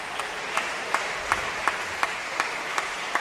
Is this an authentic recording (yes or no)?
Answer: no